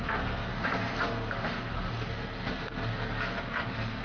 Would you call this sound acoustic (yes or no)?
no